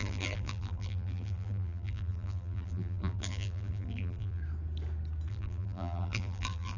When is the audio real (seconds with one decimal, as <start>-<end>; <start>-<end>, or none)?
4.4-5.3